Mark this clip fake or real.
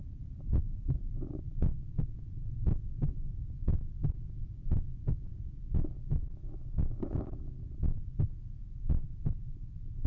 real